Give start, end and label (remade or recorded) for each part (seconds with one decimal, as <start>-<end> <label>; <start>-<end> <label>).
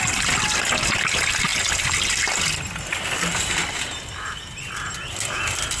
0.0-5.8 recorded